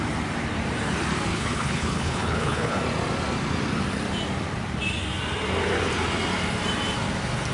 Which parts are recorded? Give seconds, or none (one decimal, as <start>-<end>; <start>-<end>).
0.0-1.3; 2.8-7.5